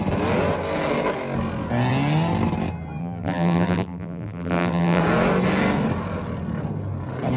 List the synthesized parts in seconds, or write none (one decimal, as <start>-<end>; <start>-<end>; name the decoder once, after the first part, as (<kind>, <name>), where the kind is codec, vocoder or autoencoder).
3.0-5.0 (vocoder, BigVGAN v2)